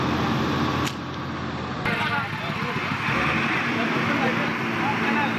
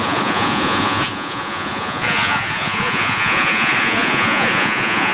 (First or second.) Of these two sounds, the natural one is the first